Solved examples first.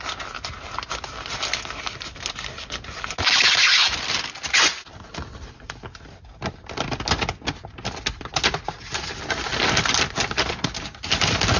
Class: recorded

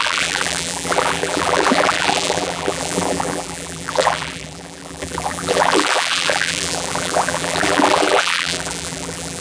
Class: remade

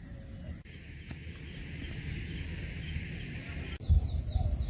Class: recorded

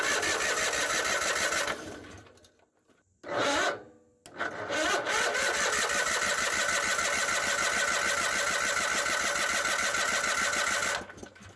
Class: recorded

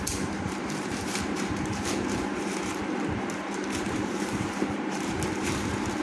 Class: remade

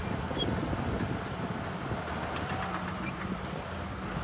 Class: recorded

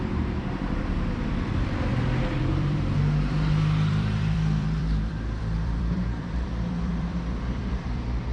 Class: remade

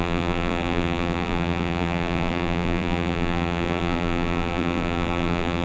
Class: remade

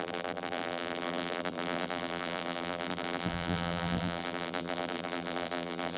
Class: remade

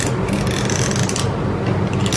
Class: recorded